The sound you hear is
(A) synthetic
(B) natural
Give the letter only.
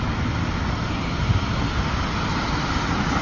B